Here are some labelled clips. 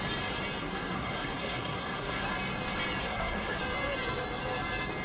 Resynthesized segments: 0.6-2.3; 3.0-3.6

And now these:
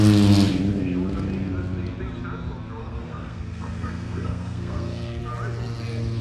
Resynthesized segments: 2.8-5.2

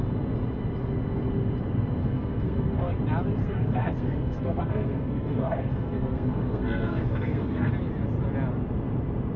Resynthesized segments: 2.0-2.9; 3.4-7.7

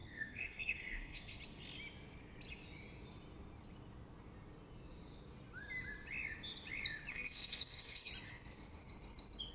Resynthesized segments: 0.0-1.4; 7.1-8.1

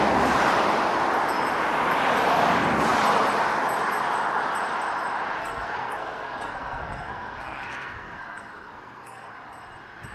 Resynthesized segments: 5.4-9.3

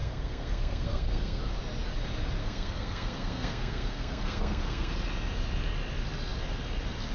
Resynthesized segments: 0.0-1.4; 2.4-4.9

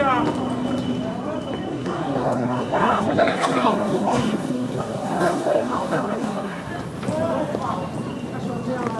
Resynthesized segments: 1.7-6.7